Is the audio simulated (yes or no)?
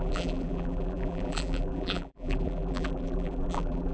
yes